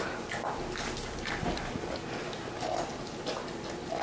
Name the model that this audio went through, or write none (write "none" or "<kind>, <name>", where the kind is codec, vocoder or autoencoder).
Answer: none